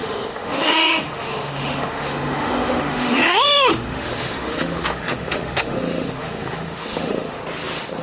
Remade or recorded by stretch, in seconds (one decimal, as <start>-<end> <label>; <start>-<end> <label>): 0.0-7.4 remade; 7.4-8.0 recorded